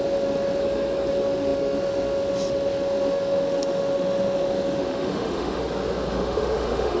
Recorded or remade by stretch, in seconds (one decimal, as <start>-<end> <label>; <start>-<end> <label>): 0.0-0.6 remade; 0.6-1.1 recorded; 1.1-5.6 remade; 5.6-6.1 recorded; 6.1-7.0 remade

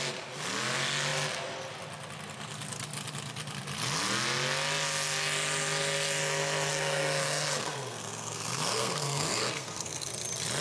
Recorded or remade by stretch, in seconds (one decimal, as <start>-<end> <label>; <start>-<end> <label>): 0.0-6.7 recorded; 6.7-10.1 remade; 10.1-10.6 recorded

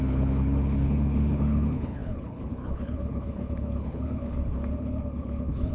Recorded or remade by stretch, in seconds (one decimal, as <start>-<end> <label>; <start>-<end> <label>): 0.0-5.7 remade